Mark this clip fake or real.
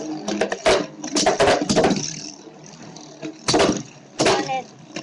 real